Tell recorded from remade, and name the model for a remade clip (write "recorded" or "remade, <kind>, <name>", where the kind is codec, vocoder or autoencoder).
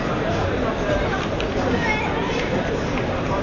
remade, vocoder, BigVGAN v2